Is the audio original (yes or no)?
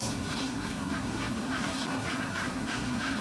no